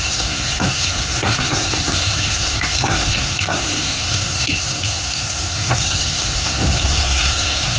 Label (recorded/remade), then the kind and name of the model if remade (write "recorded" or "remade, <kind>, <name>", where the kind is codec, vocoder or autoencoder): remade, codec, SNAC